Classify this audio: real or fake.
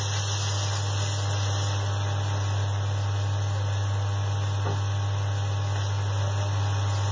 real